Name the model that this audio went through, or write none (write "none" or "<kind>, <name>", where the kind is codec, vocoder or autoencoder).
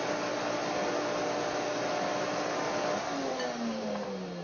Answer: none